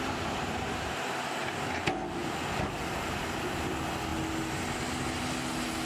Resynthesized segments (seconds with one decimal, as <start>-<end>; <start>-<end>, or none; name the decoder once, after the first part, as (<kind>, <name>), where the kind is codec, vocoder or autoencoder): none